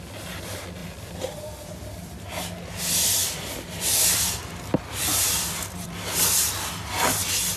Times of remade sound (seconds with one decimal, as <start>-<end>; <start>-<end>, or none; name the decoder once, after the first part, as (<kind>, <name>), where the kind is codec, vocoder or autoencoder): 0.8-2.1 (vocoder, BigVGAN v2); 3.2-6.7